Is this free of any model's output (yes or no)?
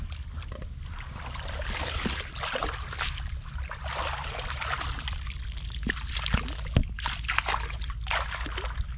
yes